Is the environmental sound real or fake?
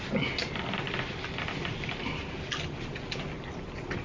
real